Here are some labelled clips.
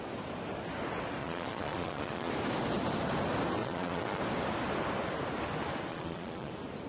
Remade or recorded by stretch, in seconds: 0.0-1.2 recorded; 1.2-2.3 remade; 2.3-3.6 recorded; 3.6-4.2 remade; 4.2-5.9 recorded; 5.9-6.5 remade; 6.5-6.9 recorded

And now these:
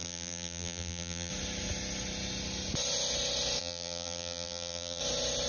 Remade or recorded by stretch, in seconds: 0.0-1.3 remade; 1.3-3.6 recorded; 3.6-5.0 remade; 5.0-5.5 recorded

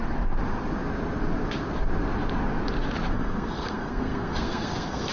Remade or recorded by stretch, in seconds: 0.0-3.1 recorded; 3.1-5.1 remade

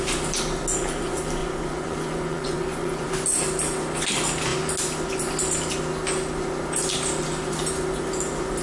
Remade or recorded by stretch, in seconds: 0.0-1.4 recorded; 1.4-3.1 remade; 3.1-8.6 recorded

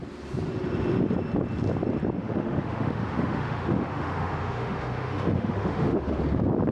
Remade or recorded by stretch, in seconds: 0.0-2.2 recorded; 2.2-6.2 remade; 6.2-6.7 recorded

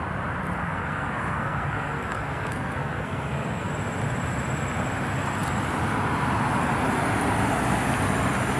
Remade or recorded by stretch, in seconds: 0.0-0.6 recorded; 0.6-3.7 remade; 3.7-8.6 recorded

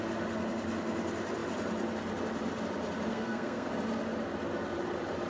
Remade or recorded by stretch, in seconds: 0.0-3.1 recorded; 3.1-3.7 remade; 3.7-5.3 recorded

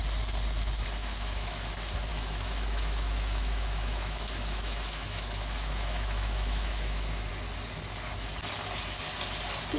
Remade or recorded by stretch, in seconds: 0.0-1.0 recorded; 1.0-1.7 remade; 1.7-2.1 recorded; 2.1-7.3 remade; 7.3-9.8 recorded